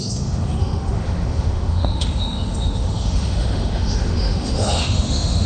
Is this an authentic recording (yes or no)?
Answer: no